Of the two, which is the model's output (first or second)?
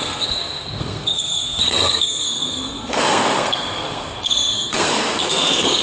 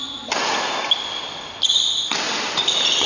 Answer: first